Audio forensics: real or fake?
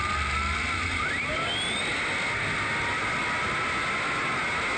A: real